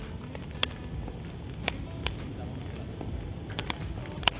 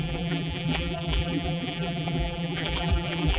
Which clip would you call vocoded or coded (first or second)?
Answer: second